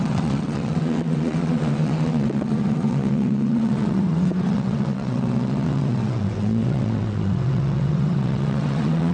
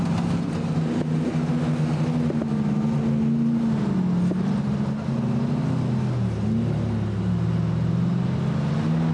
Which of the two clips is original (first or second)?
second